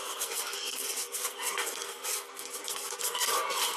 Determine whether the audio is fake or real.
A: fake